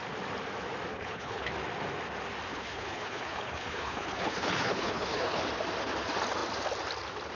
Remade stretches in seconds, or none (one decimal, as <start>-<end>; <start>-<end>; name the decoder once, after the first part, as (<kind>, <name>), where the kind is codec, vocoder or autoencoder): 0.9-1.5 (codec, HILCodec); 2.5-5.4